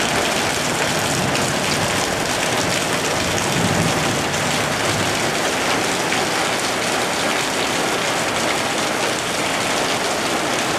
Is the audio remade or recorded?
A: recorded